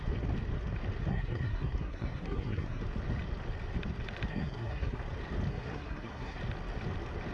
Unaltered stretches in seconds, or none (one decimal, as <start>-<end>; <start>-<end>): 0.0-1.1; 2.8-4.3; 5.0-5.5; 6.4-7.3